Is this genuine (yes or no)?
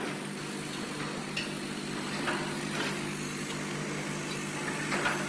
yes